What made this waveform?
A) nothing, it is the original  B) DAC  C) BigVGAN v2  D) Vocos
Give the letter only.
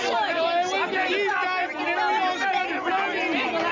A